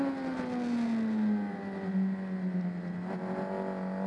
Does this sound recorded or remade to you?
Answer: recorded